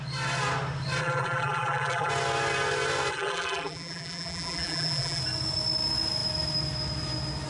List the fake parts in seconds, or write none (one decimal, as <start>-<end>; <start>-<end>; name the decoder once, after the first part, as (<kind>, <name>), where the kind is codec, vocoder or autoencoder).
1.0-2.1 (vocoder, BigVGAN v2); 3.1-5.2